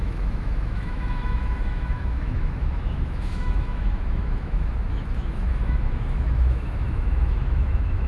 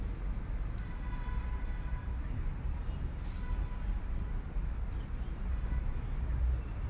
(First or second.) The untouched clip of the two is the second